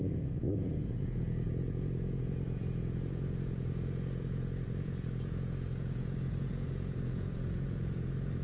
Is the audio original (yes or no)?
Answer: no